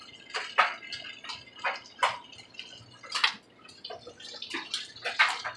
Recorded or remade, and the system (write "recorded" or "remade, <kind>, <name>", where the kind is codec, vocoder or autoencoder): recorded